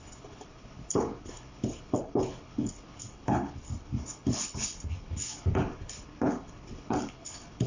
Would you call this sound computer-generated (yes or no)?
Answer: yes